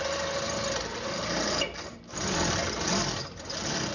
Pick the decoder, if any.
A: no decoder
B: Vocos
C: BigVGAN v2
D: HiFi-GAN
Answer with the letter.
A